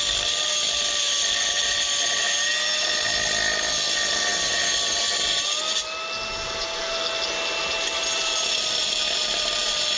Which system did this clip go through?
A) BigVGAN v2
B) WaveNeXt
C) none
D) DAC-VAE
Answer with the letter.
C